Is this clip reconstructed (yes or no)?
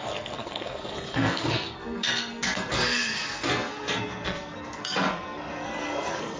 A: yes